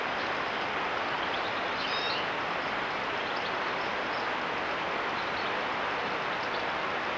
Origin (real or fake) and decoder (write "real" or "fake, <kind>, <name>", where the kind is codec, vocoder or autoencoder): real